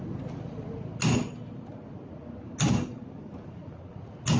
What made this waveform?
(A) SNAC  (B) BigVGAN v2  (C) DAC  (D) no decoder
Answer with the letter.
D